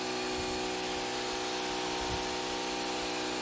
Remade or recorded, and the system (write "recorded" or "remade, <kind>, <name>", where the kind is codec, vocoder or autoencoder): recorded